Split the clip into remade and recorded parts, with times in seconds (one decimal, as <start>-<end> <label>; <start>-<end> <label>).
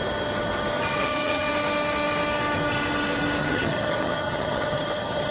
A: 0.0-1.0 recorded; 1.0-1.5 remade; 1.5-3.4 recorded; 3.4-5.3 remade